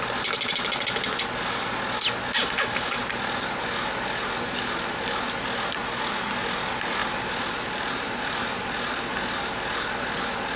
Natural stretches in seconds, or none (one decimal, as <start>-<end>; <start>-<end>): 0.0-2.4; 3.0-10.6